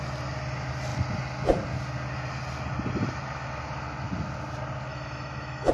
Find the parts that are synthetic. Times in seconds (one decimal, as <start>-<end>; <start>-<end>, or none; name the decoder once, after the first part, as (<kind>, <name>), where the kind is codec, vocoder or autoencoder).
4.9-5.7 (autoencoder, DAC-VAE)